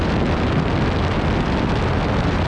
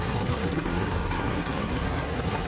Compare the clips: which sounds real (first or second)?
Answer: first